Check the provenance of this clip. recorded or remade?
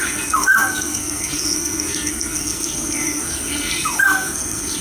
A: remade